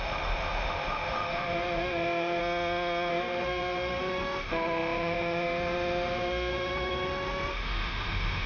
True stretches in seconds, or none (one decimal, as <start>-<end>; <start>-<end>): 2.4-3.1